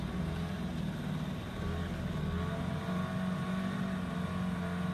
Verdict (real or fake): real